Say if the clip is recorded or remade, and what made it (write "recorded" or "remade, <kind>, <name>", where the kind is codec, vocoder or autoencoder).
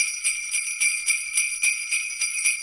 recorded